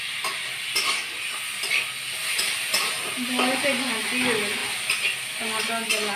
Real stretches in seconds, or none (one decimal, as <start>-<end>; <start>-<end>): 0.0-6.2

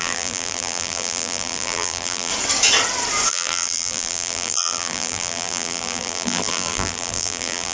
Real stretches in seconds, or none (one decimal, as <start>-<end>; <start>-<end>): 2.3-3.3